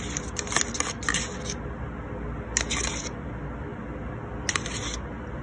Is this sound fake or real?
real